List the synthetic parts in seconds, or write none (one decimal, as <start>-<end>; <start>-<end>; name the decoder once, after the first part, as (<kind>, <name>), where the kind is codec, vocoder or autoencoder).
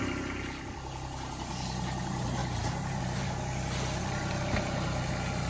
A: none